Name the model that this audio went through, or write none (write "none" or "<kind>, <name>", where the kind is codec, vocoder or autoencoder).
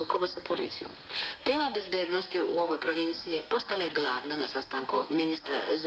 codec, SNAC